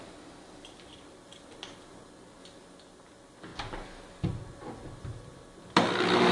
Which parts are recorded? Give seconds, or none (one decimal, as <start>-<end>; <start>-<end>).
0.0-6.3